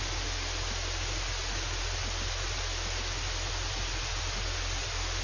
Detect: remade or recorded recorded